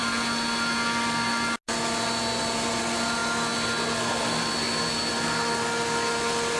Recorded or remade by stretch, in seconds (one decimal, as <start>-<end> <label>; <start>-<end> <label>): 0.0-6.6 recorded